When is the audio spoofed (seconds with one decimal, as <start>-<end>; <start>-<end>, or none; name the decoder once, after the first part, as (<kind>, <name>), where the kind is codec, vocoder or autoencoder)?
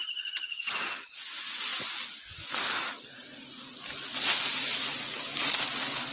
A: none